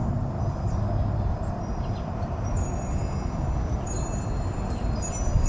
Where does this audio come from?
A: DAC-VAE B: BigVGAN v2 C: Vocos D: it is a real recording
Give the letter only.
B